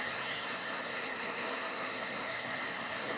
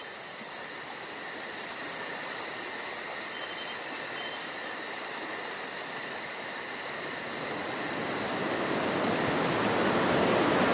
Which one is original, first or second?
second